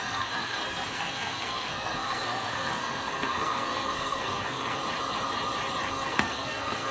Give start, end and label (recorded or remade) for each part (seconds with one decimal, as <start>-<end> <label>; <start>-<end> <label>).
0.0-4.8 remade; 4.8-5.9 recorded; 5.9-6.9 remade